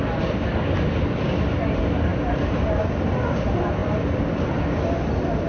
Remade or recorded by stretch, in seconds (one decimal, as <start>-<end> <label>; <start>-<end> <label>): 0.0-2.1 recorded; 2.1-2.6 remade; 2.6-5.5 recorded